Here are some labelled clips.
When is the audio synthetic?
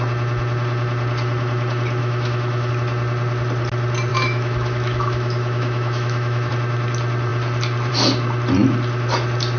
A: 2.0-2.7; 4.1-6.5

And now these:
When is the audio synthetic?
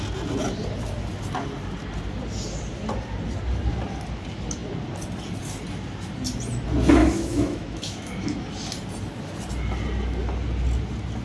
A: 7.0-8.4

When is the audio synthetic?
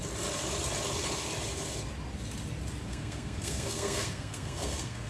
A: 2.9-5.1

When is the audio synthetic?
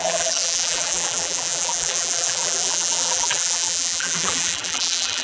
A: 0.0-5.2